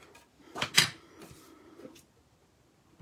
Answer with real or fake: real